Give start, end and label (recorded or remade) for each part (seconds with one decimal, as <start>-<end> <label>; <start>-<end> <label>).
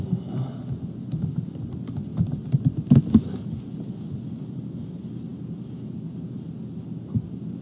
0.0-7.6 recorded